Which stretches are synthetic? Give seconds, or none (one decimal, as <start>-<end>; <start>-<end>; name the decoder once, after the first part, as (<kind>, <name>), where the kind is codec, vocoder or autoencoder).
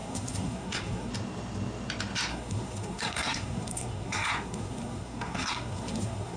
0.0-1.1 (codec, SNAC); 2.3-6.4